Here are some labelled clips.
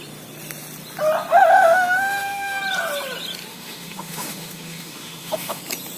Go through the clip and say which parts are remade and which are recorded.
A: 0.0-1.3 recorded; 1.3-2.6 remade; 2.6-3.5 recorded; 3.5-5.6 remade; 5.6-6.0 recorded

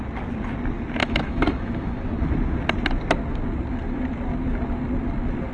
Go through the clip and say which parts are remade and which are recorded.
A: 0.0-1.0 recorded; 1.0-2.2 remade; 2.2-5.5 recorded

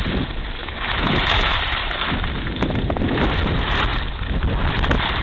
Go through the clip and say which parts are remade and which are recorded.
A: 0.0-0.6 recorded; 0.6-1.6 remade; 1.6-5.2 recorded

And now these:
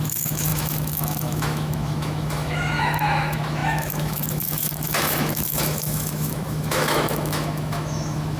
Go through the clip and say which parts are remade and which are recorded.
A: 0.0-8.4 remade

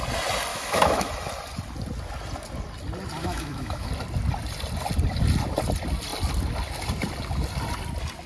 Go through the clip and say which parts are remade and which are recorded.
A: 0.0-0.5 recorded; 0.5-1.1 remade; 1.1-3.2 recorded; 3.2-3.9 remade; 3.9-8.3 recorded